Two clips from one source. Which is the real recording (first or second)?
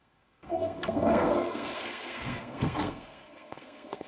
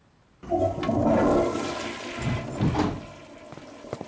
second